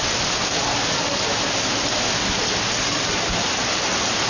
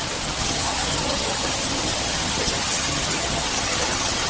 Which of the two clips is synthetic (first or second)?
second